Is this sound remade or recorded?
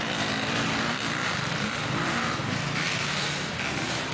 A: recorded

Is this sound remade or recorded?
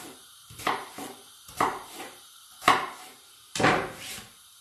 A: remade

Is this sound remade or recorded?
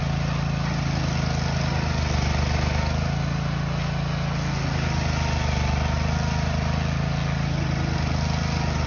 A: recorded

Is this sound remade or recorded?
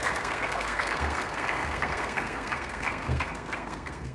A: remade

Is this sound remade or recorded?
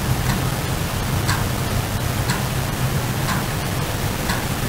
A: recorded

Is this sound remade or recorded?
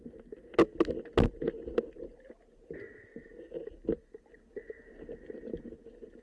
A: recorded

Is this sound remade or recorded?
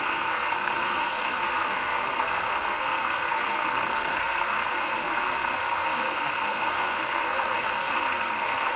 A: remade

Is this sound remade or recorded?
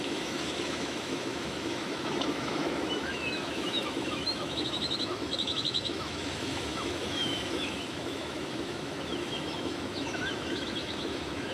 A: remade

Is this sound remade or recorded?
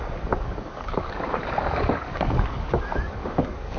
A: remade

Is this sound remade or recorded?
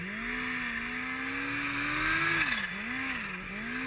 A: recorded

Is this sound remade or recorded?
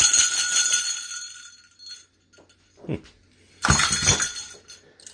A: recorded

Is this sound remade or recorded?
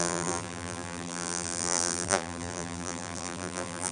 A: remade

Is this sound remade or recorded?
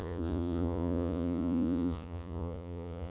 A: remade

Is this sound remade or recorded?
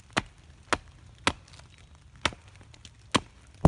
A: recorded